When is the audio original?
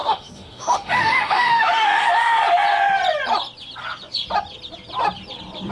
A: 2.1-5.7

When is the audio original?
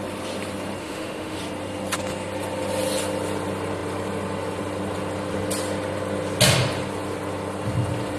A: 0.0-0.8; 1.4-8.2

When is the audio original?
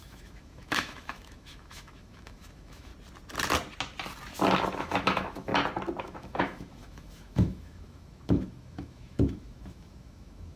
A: 2.9-4.8; 5.5-6.0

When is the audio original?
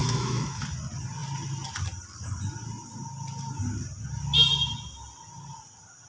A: 0.6-6.1